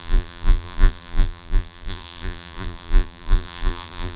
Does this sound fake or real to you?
fake